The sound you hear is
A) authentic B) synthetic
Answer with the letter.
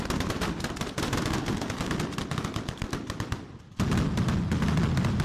A